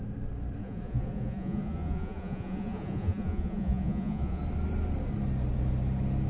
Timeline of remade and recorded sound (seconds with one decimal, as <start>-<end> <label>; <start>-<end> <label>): 0.0-0.6 recorded; 0.6-4.4 remade; 4.4-6.3 recorded

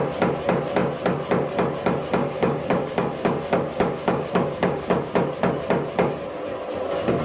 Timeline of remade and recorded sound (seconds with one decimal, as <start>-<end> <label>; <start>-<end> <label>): 0.0-2.2 recorded; 2.2-5.1 remade; 5.1-7.2 recorded

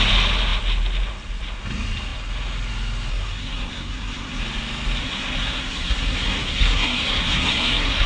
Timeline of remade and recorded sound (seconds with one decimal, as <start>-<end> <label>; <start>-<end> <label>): 0.0-3.1 recorded; 3.1-4.4 remade; 4.4-5.0 recorded; 5.0-8.1 remade

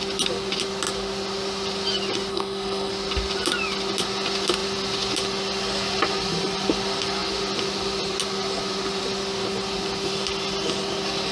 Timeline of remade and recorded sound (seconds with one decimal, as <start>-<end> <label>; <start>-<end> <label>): 0.0-2.3 recorded; 2.3-2.9 remade; 2.9-11.3 recorded

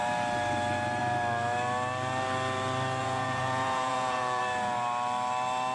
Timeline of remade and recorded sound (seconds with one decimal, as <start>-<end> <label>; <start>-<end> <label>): 0.0-3.0 recorded; 3.0-4.4 remade; 4.4-5.7 recorded

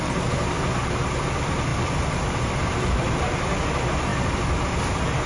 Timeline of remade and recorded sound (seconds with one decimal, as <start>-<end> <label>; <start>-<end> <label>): 0.0-1.7 recorded; 1.7-3.3 remade; 3.3-5.3 recorded